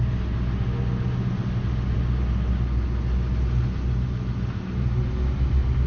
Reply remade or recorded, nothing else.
recorded